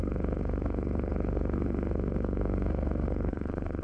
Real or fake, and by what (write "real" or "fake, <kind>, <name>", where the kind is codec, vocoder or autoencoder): fake, codec, SNAC